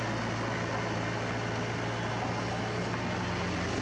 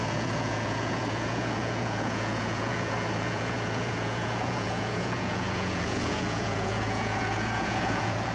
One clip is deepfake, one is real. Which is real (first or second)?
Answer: first